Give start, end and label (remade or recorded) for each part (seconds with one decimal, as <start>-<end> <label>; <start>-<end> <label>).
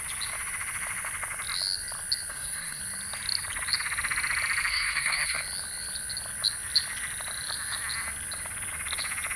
0.0-2.3 recorded; 2.3-2.8 remade; 2.8-4.7 recorded; 4.7-5.4 remade; 5.4-9.4 recorded